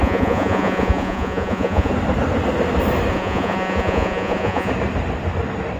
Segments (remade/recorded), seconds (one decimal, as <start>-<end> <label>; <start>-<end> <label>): 0.0-1.9 remade; 1.9-3.1 recorded; 3.1-4.7 remade; 4.7-5.8 recorded